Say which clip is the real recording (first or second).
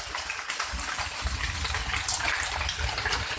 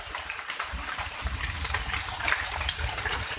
first